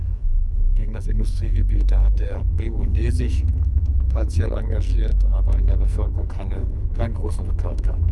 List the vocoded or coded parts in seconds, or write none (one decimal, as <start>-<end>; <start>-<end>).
0.0-8.1